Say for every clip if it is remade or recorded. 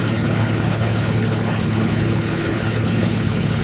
remade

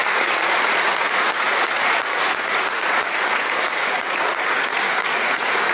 remade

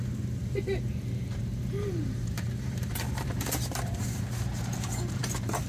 remade